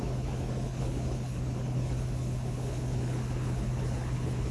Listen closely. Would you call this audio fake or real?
fake